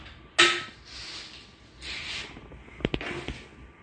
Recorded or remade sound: recorded